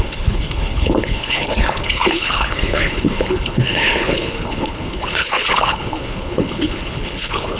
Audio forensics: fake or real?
fake